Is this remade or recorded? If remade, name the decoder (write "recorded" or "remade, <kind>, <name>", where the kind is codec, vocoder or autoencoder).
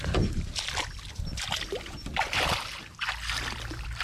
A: recorded